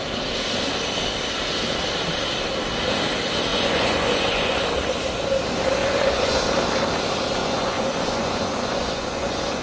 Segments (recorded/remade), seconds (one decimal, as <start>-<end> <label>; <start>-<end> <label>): 0.0-3.5 recorded; 3.5-4.6 remade; 4.6-5.8 recorded; 5.8-6.4 remade; 6.4-7.4 recorded; 7.4-9.6 remade